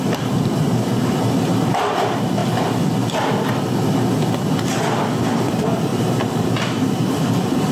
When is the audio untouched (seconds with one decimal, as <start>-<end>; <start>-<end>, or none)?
1.0-1.5; 2.4-5.5

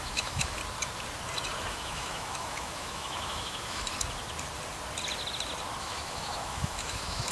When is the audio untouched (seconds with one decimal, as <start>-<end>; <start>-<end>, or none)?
0.6-1.7; 3.9-5.8

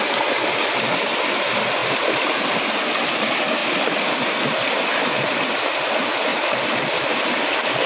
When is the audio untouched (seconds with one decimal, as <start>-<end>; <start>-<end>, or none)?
0.0-1.8; 2.4-6.3; 7.1-7.9